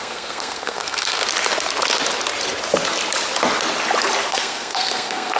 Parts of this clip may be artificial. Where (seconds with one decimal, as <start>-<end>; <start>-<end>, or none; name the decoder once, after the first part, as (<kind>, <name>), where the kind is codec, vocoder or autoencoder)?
0.0-1.2 (codec, SNAC); 4.3-5.4